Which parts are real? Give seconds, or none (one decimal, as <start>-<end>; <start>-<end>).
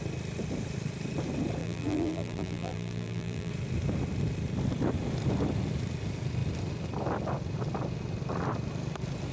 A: 0.0-1.6; 3.5-9.3